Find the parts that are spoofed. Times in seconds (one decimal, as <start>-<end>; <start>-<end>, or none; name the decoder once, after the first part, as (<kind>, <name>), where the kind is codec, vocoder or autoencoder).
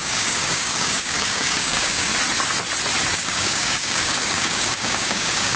0.0-2.1 (codec, DAC); 3.1-5.6